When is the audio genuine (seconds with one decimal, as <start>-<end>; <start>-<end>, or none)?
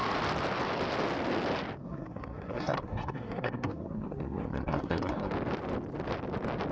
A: 0.0-1.8; 5.3-6.7